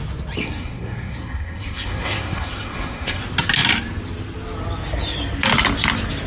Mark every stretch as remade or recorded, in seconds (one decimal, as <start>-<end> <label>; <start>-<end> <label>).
0.0-0.4 recorded; 0.4-3.2 remade; 3.2-6.3 recorded